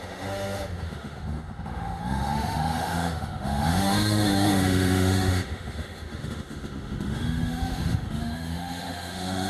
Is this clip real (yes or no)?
no